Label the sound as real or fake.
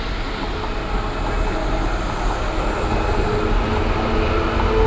real